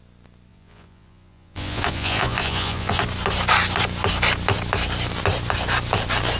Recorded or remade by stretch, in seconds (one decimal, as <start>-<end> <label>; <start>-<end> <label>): 0.0-0.5 recorded; 0.5-3.0 remade; 3.0-6.4 recorded